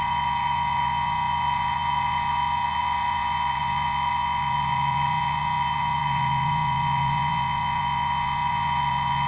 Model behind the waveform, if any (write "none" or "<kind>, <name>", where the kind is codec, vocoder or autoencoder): vocoder, Vocos